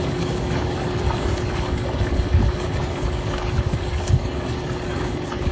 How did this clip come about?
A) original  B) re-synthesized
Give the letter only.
B